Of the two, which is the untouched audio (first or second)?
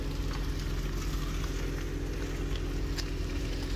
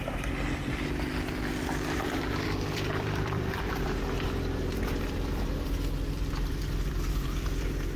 first